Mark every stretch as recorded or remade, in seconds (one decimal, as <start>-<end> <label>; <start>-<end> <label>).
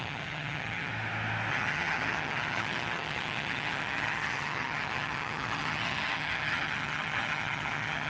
0.0-0.9 remade; 0.9-1.5 recorded; 1.5-8.1 remade